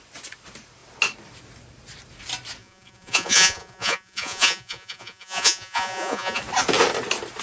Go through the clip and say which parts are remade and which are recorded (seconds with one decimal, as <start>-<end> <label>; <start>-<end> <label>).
0.0-2.6 recorded; 2.6-6.4 remade; 6.4-7.4 recorded